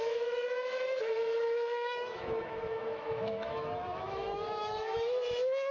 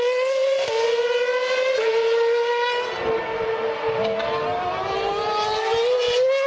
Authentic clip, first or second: second